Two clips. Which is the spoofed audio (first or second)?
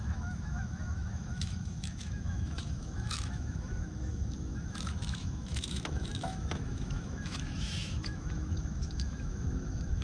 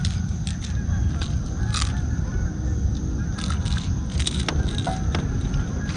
first